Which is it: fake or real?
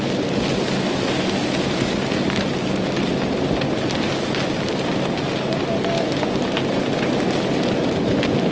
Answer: real